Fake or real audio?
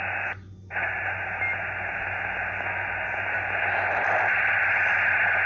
real